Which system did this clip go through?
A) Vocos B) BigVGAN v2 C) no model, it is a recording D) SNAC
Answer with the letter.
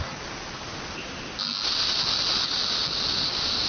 C